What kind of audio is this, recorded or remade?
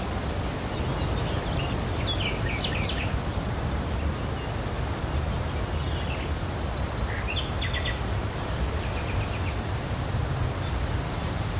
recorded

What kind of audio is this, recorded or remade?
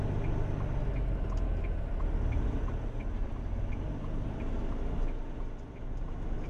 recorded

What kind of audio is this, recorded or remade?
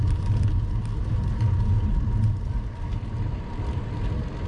recorded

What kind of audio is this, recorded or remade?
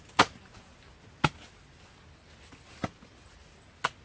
recorded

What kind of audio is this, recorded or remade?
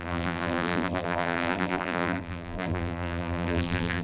remade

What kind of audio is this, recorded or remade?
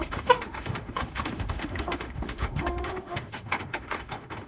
remade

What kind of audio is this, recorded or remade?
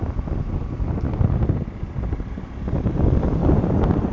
recorded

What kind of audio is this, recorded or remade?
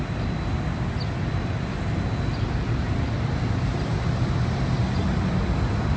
recorded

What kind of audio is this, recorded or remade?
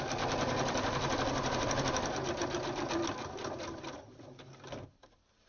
recorded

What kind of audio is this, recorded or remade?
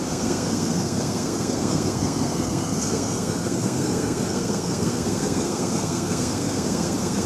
remade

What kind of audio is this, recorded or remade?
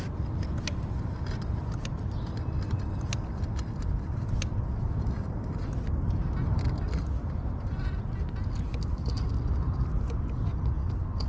recorded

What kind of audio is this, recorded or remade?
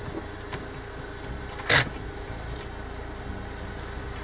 recorded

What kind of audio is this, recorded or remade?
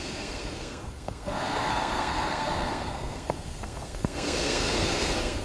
remade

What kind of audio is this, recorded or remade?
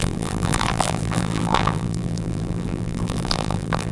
remade